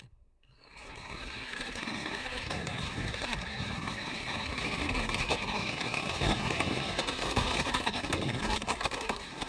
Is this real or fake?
fake